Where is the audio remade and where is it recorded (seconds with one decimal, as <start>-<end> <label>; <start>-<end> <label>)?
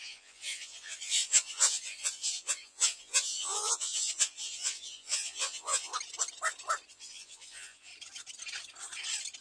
0.0-5.9 remade; 5.9-6.9 recorded; 6.9-7.9 remade; 7.9-9.4 recorded